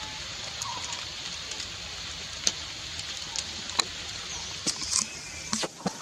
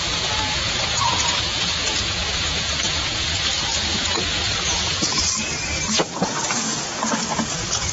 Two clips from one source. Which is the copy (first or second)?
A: second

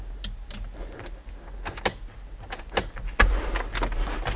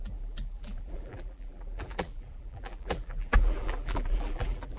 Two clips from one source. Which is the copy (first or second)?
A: second